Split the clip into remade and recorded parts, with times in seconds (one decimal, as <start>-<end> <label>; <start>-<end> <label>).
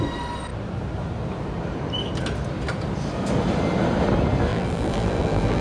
0.0-4.5 recorded; 4.5-5.6 remade